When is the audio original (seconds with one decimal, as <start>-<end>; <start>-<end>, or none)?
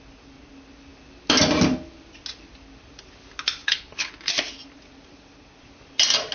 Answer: 0.0-3.6; 4.3-6.3